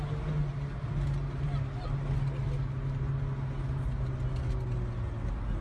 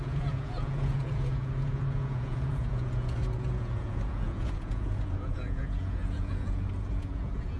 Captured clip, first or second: first